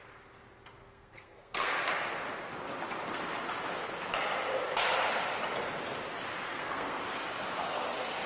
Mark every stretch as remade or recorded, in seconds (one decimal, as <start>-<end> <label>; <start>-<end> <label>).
0.0-0.8 recorded; 0.8-1.7 remade; 1.7-6.5 recorded; 6.5-7.0 remade; 7.0-8.3 recorded